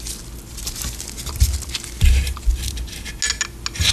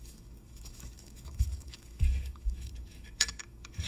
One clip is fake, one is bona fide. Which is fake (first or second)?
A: second